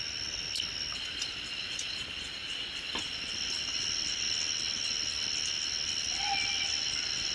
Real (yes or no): yes